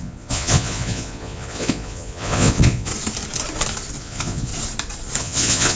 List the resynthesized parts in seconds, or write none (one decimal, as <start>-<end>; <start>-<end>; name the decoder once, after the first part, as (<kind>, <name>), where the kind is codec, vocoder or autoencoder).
0.0-2.9 (vocoder, Vocos); 4.0-4.5; 5.2-5.7